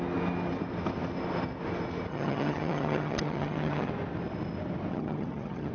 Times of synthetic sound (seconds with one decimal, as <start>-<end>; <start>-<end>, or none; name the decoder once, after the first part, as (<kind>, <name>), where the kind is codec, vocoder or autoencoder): 2.1-3.9 (vocoder, HiFi-GAN); 4.9-5.7

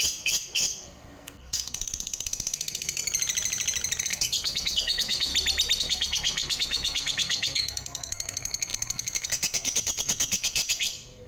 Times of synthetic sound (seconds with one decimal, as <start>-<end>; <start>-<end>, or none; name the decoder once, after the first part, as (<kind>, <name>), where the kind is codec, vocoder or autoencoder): 0.0-3.0 (codec, SNAC); 4.0-5.3; 5.8-11.3

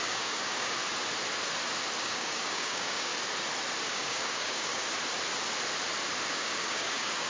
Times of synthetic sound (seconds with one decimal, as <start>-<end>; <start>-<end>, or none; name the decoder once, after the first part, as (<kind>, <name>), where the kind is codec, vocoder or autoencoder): 0.0-0.8 (codec, DAC); 2.0-3.1; 3.9-4.8; 6.3-7.3

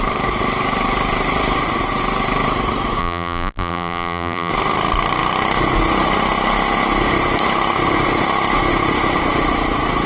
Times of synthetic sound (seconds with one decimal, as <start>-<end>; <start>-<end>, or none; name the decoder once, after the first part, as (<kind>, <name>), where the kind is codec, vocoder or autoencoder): 3.0-4.5 (vocoder, BigVGAN v2)